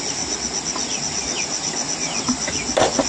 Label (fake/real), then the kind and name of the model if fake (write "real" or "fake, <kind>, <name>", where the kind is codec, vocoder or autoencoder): real